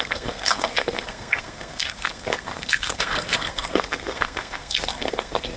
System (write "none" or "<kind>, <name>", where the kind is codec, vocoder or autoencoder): codec, SNAC